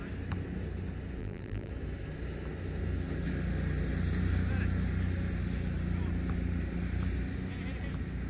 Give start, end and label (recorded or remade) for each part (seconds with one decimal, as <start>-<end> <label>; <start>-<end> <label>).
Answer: 0.0-1.2 recorded; 1.2-1.7 remade; 1.7-8.3 recorded